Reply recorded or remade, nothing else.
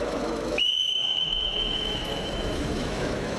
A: remade